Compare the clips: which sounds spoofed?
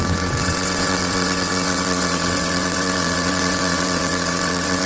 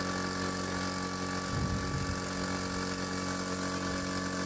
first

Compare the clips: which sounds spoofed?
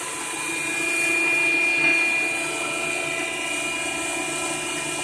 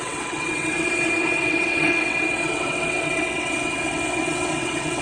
second